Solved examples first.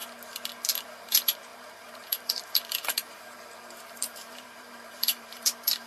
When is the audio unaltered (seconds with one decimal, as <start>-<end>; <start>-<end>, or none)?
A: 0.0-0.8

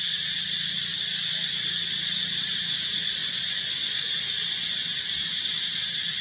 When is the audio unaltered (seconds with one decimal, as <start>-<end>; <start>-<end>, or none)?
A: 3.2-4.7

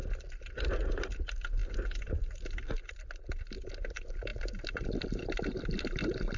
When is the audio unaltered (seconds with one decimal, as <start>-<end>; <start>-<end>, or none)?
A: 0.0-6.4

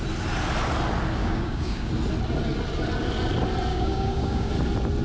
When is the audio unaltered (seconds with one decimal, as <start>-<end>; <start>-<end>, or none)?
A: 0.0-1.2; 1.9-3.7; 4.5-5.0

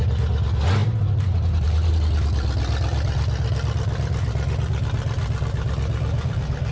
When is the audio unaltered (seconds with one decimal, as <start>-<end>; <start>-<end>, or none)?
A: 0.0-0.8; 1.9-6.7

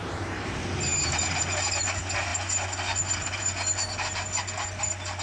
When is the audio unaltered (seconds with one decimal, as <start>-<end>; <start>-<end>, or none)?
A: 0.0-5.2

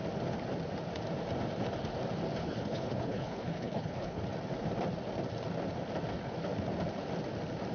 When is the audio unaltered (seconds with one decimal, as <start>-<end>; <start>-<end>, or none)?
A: 0.0-2.4; 4.2-7.7